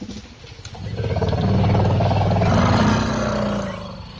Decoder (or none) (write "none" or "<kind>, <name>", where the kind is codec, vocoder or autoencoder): none